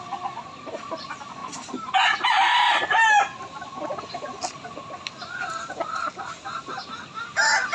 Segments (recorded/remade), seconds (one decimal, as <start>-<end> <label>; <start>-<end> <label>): 0.0-7.7 recorded